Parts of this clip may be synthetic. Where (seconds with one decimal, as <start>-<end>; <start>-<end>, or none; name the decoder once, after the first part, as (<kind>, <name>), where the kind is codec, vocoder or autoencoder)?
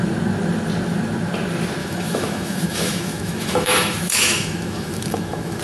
1.8-5.6 (autoencoder, DAC-VAE)